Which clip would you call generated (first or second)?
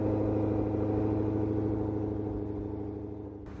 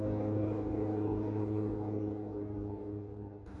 second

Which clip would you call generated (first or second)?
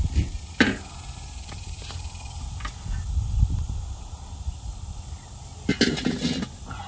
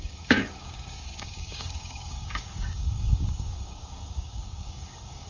second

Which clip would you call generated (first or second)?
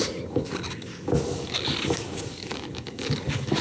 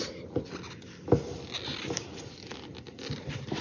first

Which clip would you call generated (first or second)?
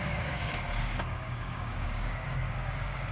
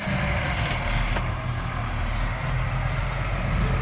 first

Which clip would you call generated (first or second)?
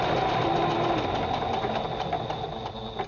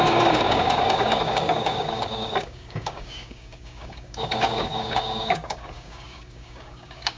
second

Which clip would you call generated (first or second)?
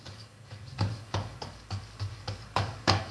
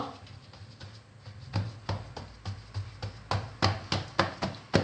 first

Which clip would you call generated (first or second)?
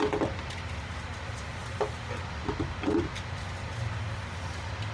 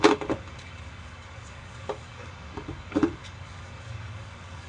second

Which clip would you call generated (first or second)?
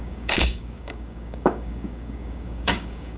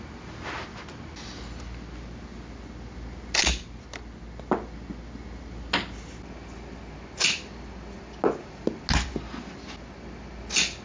first